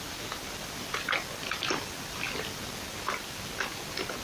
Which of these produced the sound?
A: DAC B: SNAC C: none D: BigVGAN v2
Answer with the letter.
C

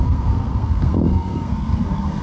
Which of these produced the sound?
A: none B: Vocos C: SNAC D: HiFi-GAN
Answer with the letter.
C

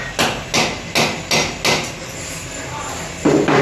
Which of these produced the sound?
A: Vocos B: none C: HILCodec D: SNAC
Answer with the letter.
B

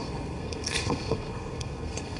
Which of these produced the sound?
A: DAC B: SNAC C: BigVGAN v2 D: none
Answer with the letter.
B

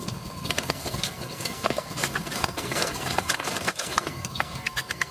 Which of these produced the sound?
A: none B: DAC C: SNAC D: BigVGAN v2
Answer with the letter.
C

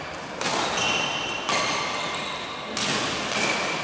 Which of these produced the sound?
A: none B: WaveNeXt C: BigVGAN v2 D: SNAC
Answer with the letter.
A